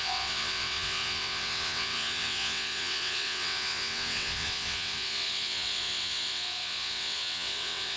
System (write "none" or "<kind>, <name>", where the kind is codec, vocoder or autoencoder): vocoder, WaveNeXt